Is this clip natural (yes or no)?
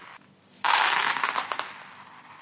yes